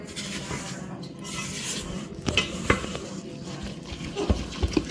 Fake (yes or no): no